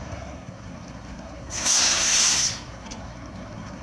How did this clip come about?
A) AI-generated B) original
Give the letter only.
A